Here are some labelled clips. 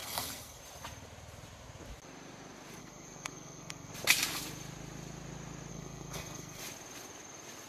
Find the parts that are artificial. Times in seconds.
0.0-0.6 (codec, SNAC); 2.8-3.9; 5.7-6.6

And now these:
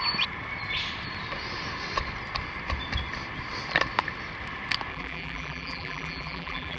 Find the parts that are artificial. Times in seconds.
4.9-6.8 (vocoder, BigVGAN v2)

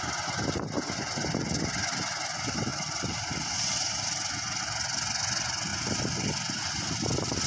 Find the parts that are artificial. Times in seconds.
none